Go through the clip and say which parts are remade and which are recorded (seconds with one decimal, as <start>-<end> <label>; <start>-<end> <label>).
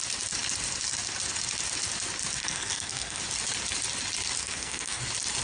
0.0-2.4 recorded; 2.4-3.2 remade; 3.2-4.4 recorded; 4.4-5.0 remade; 5.0-5.4 recorded